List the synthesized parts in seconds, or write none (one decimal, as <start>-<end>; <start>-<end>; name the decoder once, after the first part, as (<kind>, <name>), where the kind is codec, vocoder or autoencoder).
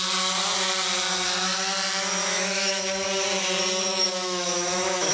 2.2-2.8 (autoencoder, DAC-VAE); 3.9-5.1